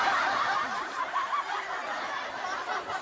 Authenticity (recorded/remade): recorded